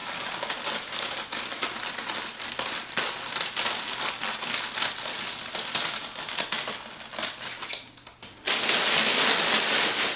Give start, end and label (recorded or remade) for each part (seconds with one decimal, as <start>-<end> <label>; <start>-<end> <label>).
0.0-10.2 recorded